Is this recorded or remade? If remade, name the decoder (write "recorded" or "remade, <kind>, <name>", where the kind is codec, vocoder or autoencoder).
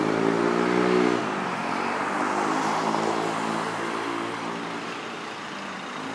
recorded